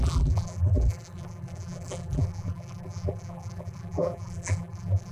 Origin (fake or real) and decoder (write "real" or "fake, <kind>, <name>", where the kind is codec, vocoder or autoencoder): fake, vocoder, BigVGAN v2